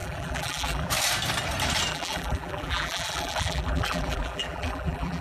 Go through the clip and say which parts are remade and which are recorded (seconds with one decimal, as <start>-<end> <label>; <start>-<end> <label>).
0.0-0.9 remade; 0.9-1.9 recorded; 1.9-5.2 remade